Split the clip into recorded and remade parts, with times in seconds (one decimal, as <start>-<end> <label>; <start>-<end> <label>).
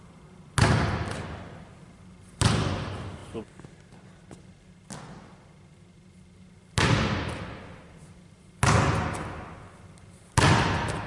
0.0-11.1 recorded